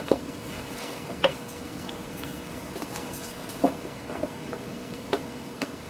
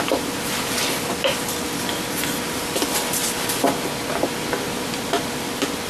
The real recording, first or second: second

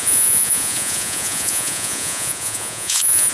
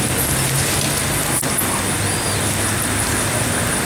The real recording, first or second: second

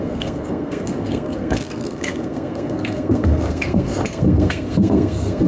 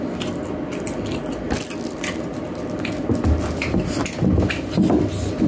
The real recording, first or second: second